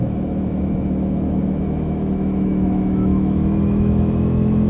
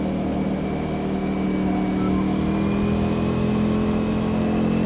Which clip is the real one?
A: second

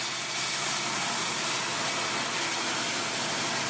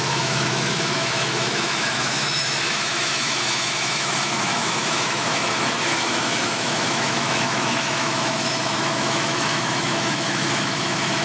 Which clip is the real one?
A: first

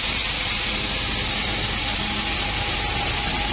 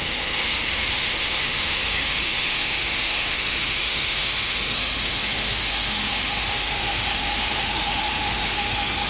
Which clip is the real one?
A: first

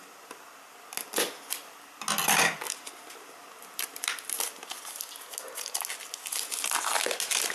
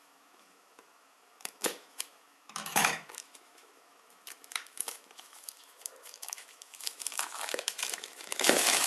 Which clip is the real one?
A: first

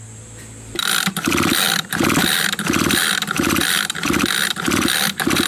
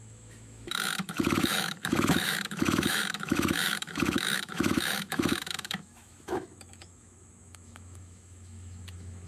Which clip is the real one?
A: first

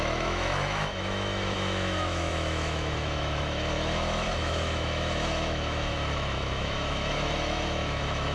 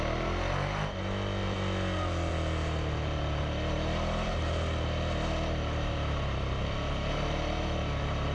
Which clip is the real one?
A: second